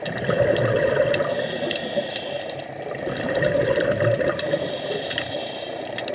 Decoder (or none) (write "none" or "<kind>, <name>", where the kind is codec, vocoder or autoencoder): none